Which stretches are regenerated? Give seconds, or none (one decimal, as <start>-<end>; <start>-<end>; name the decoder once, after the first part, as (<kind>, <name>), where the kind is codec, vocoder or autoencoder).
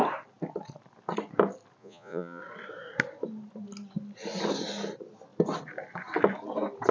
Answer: 1.8-2.4 (vocoder, Vocos)